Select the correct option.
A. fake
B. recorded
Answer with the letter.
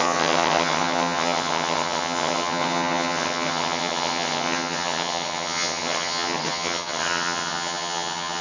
A